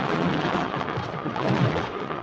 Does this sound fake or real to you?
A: fake